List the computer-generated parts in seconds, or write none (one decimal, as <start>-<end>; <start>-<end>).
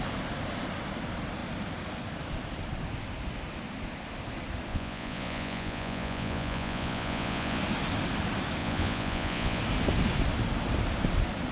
4.7-7.6; 8.6-9.6